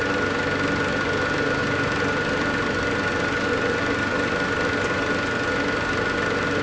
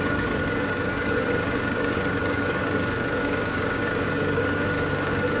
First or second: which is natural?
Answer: first